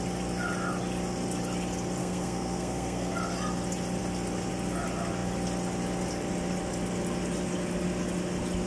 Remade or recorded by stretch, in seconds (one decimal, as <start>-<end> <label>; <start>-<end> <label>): 0.0-2.0 recorded; 2.0-3.1 remade; 3.1-8.7 recorded